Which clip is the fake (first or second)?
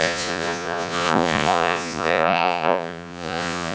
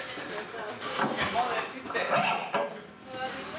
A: first